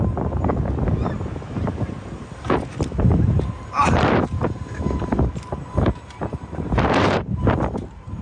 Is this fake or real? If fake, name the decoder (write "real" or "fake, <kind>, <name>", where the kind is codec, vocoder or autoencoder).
fake, vocoder, BigVGAN v2